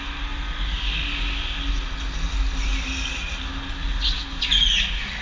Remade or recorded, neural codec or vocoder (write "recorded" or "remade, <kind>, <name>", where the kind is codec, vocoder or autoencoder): recorded